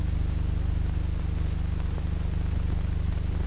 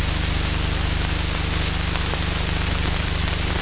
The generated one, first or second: second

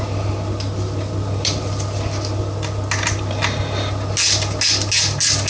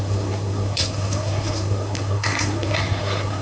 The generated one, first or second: second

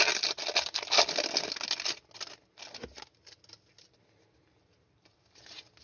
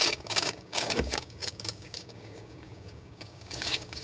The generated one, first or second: second